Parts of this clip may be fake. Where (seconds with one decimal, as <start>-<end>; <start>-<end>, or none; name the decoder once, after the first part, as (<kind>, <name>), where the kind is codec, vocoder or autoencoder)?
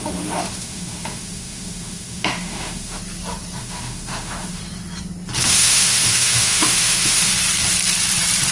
0.0-3.0 (autoencoder, DAC-VAE); 3.6-4.6; 5.4-7.3